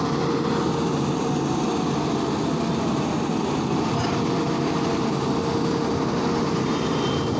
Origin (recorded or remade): recorded